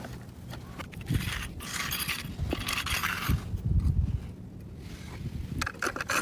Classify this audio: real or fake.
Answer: real